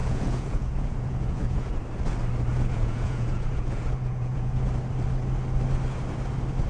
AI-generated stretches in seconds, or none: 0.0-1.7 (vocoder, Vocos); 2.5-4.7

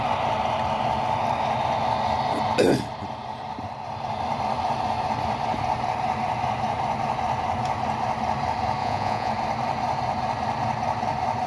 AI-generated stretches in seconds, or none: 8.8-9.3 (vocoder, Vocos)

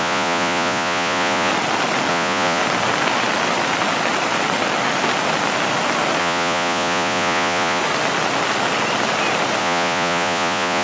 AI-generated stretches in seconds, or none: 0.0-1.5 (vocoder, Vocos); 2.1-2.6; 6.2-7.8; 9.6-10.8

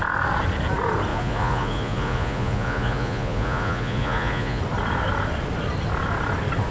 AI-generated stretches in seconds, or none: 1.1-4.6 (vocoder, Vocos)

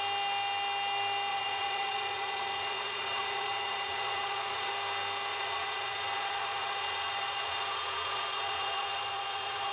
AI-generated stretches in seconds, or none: 1.3-4.7 (vocoder, Vocos); 5.3-9.7

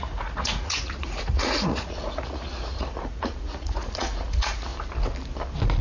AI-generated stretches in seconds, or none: 0.0-4.7 (vocoder, Vocos)